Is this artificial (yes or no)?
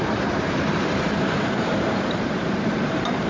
yes